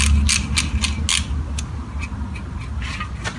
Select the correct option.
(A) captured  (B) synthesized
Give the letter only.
A